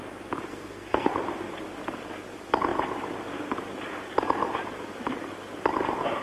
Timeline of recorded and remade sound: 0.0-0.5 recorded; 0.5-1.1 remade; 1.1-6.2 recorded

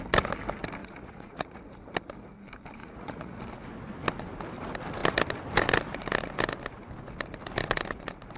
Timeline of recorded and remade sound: 0.0-0.8 recorded; 0.8-1.6 remade; 1.6-2.8 recorded; 2.8-3.4 remade; 3.4-8.4 recorded

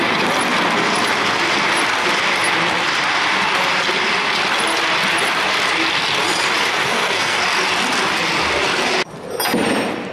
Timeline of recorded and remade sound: 0.0-6.8 recorded; 6.8-7.4 remade; 7.4-10.1 recorded